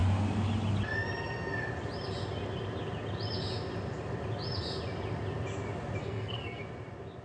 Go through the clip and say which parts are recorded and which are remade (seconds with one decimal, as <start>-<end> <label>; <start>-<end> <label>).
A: 0.0-6.0 recorded; 6.0-6.6 remade; 6.6-7.2 recorded